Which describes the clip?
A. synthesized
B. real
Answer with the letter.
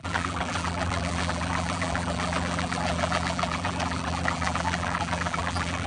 A